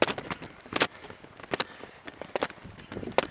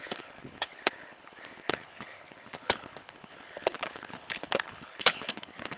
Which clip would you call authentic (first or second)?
first